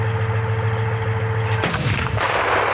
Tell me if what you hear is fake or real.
real